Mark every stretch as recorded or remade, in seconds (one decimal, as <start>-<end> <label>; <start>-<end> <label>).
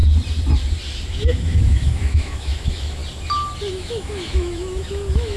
0.0-1.1 recorded; 1.1-3.0 remade; 3.0-3.7 recorded; 3.7-5.4 remade